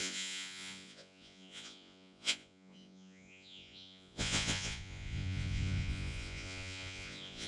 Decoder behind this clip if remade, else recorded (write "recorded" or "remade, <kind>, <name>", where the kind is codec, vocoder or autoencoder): remade, vocoder, Vocos